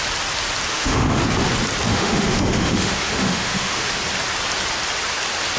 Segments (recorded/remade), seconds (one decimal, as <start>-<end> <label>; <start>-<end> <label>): 0.0-0.7 recorded; 0.7-1.2 remade; 1.2-1.9 recorded; 1.9-3.9 remade; 3.9-5.6 recorded